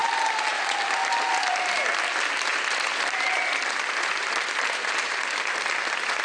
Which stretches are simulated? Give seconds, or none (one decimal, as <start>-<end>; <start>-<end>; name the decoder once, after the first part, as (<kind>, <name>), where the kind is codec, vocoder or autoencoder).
2.5-5.6 (vocoder, BigVGAN v2)